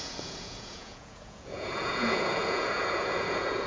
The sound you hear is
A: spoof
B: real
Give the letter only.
A